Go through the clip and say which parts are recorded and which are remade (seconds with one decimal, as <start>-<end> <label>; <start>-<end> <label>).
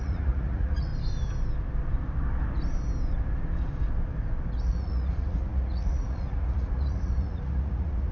0.0-0.9 remade; 0.9-4.6 recorded; 4.6-8.1 remade